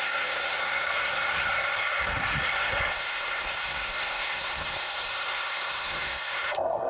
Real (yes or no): no